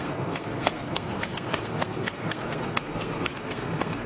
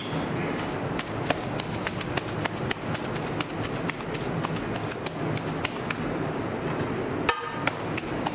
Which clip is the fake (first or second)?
first